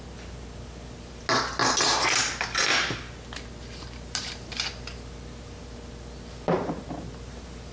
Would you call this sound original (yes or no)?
yes